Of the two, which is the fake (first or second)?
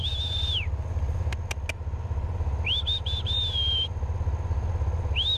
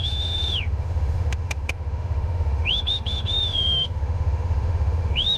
second